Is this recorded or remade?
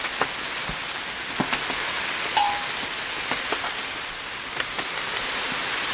recorded